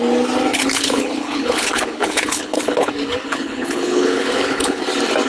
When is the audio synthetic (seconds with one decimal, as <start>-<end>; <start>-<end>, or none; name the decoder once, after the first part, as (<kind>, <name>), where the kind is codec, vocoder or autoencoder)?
0.5-2.9 (codec, HILCodec); 3.3-4.8